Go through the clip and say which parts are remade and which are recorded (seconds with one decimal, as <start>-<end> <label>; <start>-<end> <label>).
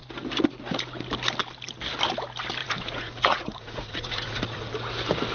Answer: 0.0-2.6 recorded; 2.6-4.7 remade; 4.7-5.3 recorded